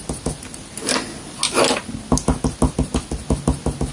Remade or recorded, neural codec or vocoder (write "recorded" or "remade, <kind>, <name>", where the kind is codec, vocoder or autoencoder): recorded